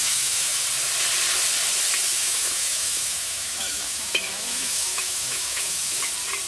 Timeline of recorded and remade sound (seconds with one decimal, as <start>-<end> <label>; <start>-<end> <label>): 0.0-0.6 remade; 0.6-2.1 recorded; 2.1-6.0 remade; 6.0-6.5 recorded